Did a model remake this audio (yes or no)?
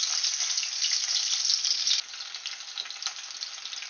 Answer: no